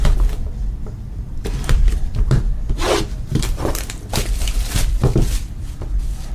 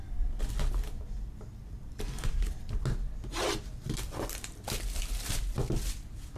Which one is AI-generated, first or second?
first